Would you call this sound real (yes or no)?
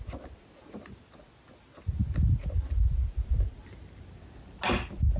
yes